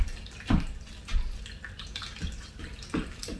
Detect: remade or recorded recorded